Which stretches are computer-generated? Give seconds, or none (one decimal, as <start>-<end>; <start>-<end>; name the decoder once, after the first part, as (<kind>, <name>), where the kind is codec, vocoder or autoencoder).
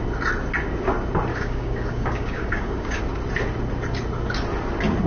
1.3-3.0 (codec, DAC)